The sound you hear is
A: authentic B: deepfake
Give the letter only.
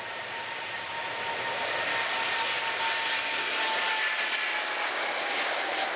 A